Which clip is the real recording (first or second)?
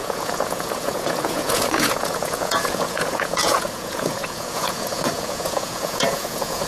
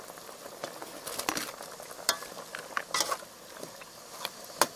second